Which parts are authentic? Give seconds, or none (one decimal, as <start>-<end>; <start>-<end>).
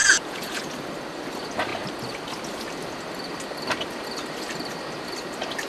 0.6-5.7